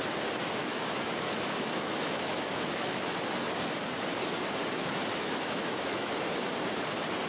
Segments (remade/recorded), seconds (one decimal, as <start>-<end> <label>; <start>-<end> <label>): 0.0-0.6 recorded; 0.6-3.1 remade; 3.1-4.8 recorded; 4.8-6.1 remade; 6.1-7.3 recorded